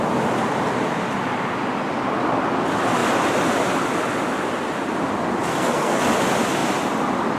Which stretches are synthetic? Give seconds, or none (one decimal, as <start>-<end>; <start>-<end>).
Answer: 5.5-6.0

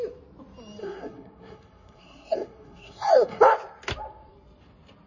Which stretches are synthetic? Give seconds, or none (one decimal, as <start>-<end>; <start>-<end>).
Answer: 0.8-3.4

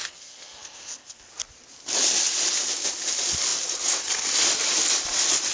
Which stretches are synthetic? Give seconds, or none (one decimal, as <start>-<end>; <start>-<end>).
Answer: 0.0-1.3

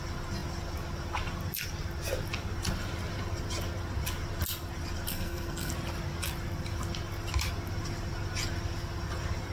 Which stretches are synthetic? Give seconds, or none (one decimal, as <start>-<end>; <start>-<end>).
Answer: 5.1-5.7